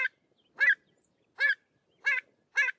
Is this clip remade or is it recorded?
recorded